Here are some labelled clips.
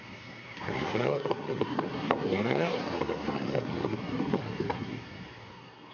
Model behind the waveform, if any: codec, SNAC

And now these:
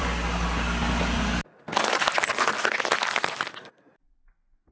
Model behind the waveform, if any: none